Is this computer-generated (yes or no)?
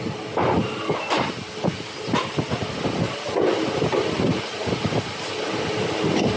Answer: no